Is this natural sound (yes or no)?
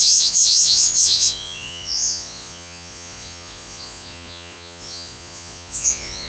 no